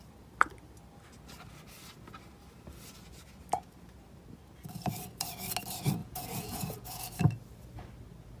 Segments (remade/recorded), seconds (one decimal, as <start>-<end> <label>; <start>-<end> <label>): 0.0-6.0 recorded; 6.0-7.2 remade; 7.2-8.4 recorded